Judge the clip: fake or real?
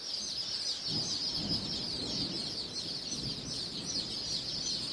real